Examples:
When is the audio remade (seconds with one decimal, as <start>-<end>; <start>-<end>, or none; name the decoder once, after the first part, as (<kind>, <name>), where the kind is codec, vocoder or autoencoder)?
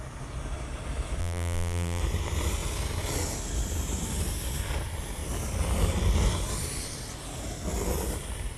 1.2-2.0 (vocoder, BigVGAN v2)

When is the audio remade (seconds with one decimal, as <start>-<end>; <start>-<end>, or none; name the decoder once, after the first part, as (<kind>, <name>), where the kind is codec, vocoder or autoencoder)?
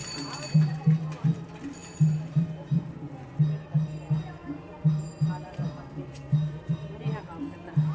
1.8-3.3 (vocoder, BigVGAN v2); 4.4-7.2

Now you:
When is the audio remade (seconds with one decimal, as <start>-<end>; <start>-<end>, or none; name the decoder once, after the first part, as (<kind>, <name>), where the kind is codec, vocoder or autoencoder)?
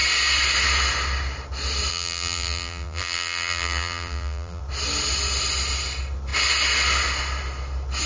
1.9-4.6 (vocoder, BigVGAN v2)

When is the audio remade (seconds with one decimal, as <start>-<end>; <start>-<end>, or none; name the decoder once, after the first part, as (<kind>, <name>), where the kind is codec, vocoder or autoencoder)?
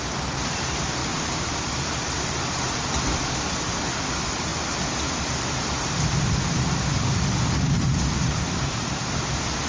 1.0-2.6 (vocoder, BigVGAN v2)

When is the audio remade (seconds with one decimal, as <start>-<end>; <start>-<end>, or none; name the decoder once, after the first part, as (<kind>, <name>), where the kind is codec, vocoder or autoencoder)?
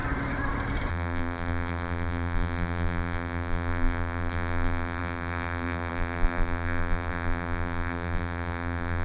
0.9-9.0 (vocoder, BigVGAN v2)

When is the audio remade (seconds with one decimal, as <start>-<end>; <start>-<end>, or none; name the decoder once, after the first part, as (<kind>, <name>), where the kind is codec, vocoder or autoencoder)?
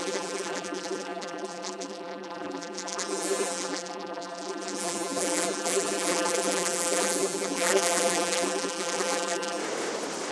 0.0-9.6 (vocoder, BigVGAN v2)